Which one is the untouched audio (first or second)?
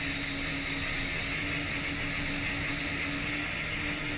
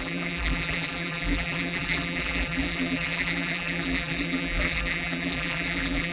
first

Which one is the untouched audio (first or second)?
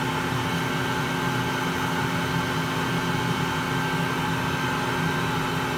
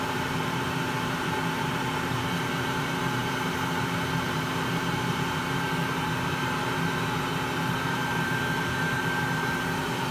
first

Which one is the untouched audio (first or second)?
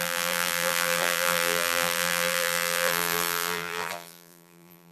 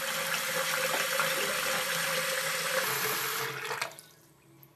second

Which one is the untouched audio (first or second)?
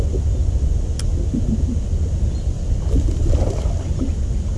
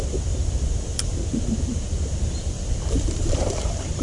first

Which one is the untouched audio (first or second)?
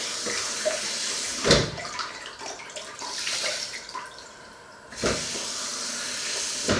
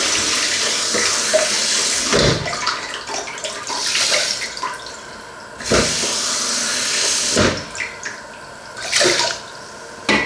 second